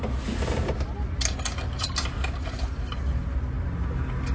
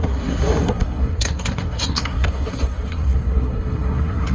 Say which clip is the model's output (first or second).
second